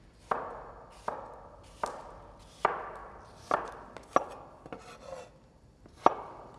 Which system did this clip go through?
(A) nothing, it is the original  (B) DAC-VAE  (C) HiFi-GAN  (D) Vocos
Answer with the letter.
A